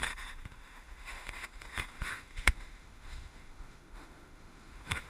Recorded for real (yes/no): no